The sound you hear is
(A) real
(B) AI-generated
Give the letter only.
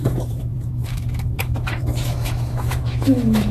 B